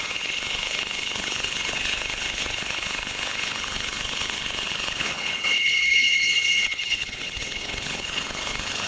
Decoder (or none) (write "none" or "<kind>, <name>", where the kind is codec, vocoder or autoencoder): codec, HILCodec